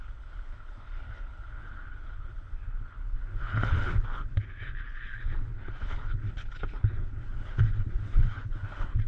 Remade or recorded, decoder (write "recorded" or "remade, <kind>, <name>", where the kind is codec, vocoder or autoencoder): remade, codec, HILCodec